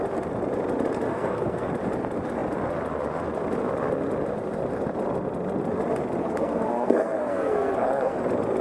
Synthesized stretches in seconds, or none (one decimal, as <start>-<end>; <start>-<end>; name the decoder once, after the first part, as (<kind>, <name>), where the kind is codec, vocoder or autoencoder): 1.1-1.7 (codec, SNAC); 6.2-8.2